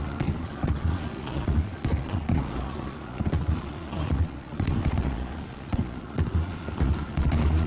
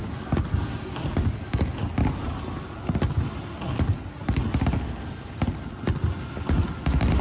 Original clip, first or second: second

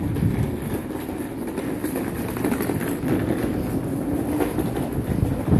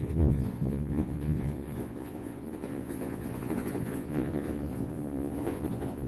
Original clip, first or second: first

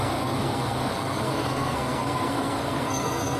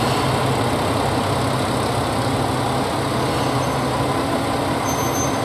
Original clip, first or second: second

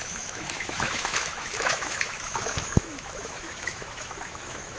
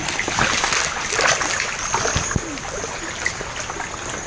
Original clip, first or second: second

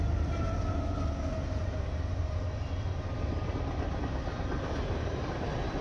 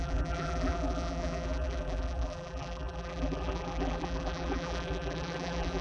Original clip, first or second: first